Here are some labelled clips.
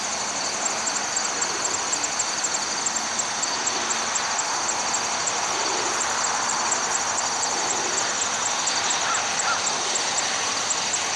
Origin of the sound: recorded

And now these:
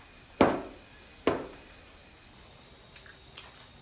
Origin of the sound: recorded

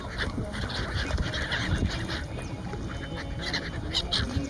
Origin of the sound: recorded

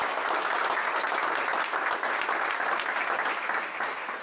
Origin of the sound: recorded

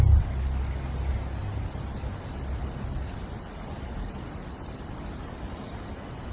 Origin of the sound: recorded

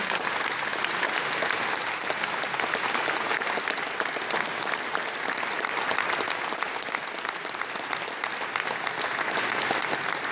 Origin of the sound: recorded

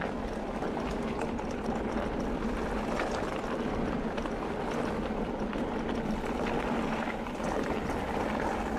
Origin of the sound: recorded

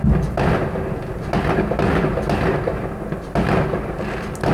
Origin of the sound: recorded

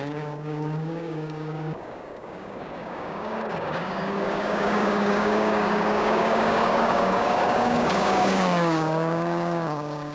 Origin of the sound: remade